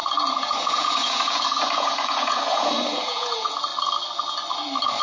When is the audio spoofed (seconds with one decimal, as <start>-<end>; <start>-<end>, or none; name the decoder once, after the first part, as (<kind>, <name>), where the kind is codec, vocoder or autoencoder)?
0.0-3.7 (vocoder, Vocos)